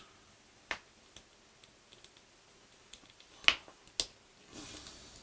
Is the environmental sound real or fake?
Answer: real